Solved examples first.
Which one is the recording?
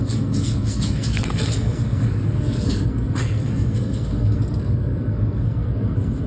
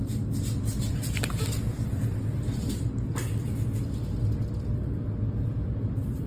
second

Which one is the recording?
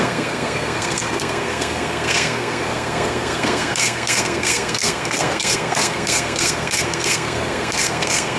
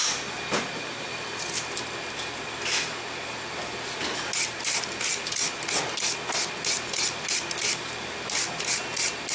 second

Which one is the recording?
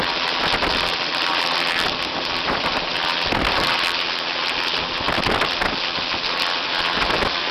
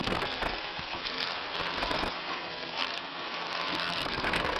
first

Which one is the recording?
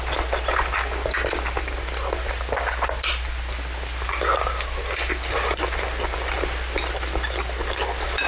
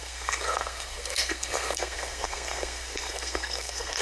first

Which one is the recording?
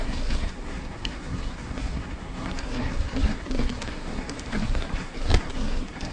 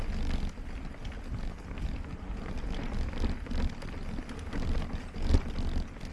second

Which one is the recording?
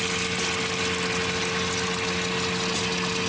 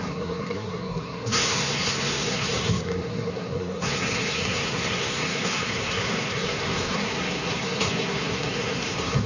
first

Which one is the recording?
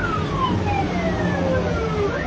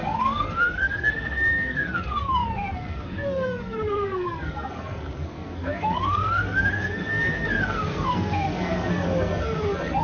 first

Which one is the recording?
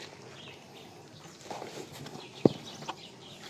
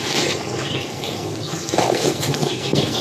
first